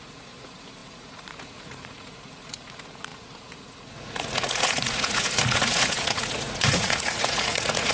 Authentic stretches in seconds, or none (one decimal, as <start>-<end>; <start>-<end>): none